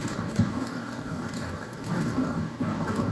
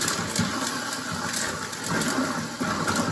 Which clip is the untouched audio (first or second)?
second